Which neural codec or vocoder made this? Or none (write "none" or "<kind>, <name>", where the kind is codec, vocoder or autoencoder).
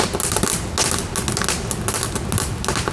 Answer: none